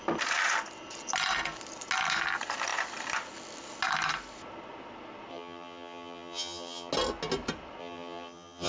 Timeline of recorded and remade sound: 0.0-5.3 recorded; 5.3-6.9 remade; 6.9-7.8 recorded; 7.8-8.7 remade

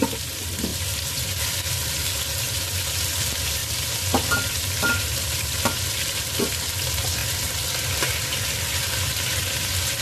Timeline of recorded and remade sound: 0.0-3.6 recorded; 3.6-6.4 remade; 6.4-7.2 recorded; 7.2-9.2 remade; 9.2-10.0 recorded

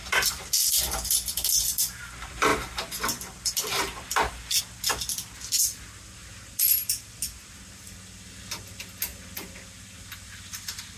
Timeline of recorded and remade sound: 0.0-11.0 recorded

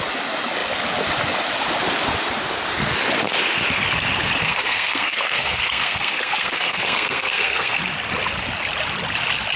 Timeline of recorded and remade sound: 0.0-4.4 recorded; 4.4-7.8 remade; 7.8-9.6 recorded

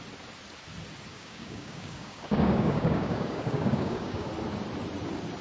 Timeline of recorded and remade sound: 0.0-1.1 recorded; 1.1-4.3 remade; 4.3-5.4 recorded

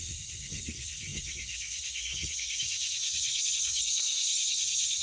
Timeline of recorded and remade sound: 0.0-5.0 remade

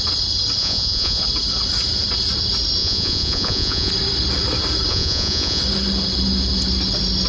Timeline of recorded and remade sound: 0.0-0.6 recorded; 0.6-1.2 remade; 1.2-2.8 recorded; 2.8-3.9 remade; 3.9-4.9 recorded; 4.9-5.6 remade; 5.6-7.3 recorded